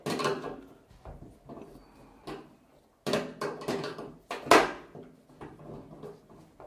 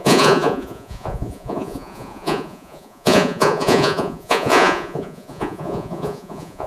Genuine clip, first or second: first